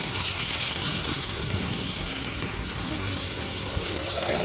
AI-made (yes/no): yes